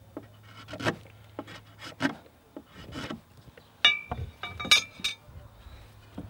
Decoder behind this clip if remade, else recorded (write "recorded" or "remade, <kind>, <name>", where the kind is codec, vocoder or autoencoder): recorded